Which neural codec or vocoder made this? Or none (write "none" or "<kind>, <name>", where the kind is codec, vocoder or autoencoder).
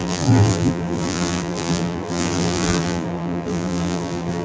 vocoder, BigVGAN v2